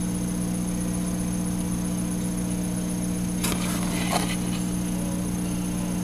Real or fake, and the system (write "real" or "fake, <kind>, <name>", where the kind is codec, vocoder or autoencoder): real